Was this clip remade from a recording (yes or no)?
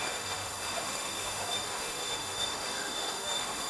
yes